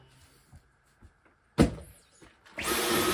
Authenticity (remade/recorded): recorded